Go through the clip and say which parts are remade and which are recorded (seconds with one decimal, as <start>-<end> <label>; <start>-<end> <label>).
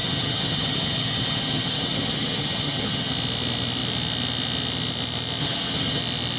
0.0-3.1 remade; 3.1-5.4 recorded; 5.4-6.0 remade; 6.0-6.4 recorded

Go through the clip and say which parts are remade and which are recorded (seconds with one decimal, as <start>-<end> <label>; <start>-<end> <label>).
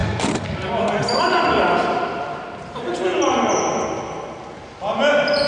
0.0-5.5 recorded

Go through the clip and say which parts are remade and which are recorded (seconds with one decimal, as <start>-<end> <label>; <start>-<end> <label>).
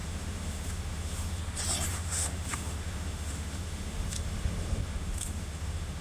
0.0-1.4 remade; 1.4-1.9 recorded; 1.9-6.0 remade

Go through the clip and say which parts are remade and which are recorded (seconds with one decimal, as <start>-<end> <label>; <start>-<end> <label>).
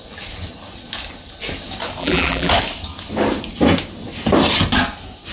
0.0-2.0 recorded; 2.0-2.5 remade; 2.5-5.3 recorded